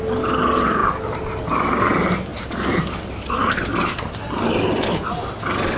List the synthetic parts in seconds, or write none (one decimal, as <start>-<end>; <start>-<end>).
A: none